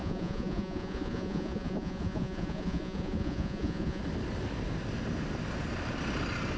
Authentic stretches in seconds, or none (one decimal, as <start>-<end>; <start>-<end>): 4.0-6.6